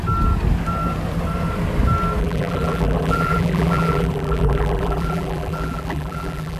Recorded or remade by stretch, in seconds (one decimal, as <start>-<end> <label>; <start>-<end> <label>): 0.0-2.2 recorded; 2.2-6.6 remade